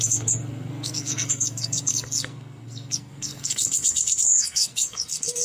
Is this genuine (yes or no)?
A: no